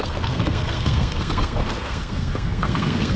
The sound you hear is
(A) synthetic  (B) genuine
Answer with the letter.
A